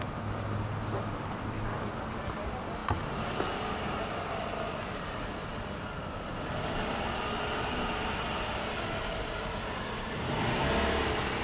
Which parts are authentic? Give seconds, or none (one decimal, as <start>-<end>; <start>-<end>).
0.0-11.4